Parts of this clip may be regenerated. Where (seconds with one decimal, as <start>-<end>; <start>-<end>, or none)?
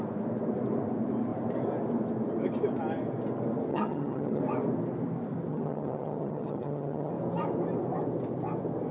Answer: 3.7-4.4; 5.5-7.1